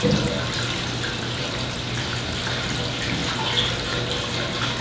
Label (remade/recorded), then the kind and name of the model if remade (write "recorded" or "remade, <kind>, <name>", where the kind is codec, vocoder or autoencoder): recorded